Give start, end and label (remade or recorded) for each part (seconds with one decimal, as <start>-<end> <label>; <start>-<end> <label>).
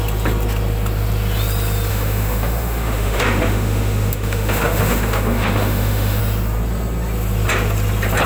0.0-1.9 recorded; 1.9-6.2 remade; 6.2-8.3 recorded